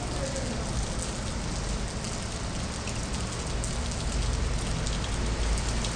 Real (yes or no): yes